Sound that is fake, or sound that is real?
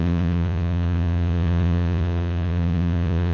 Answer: fake